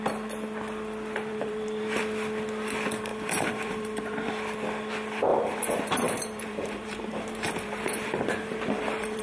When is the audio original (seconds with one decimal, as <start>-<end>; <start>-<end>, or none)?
0.0-1.3; 2.0-3.1; 4.3-5.3